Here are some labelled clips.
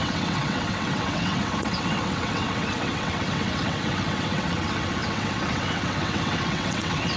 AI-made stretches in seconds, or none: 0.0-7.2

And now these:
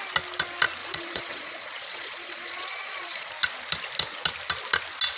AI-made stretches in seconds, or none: 0.8-3.3

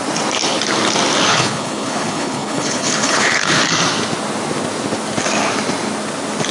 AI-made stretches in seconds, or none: 1.3-3.6

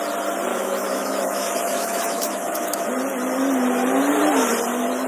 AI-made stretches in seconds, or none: 0.5-2.9

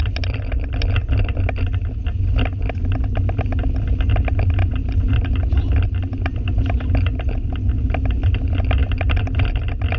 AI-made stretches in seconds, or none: none